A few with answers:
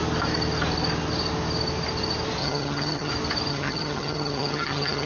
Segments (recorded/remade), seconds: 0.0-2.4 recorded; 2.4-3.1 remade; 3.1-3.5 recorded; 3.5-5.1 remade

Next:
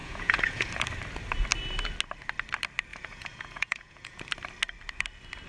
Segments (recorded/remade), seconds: 0.0-0.7 remade; 0.7-2.9 recorded; 2.9-4.2 remade; 4.2-5.5 recorded